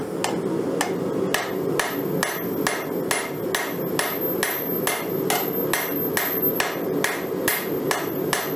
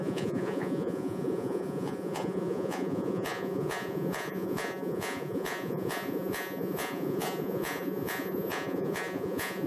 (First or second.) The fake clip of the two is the second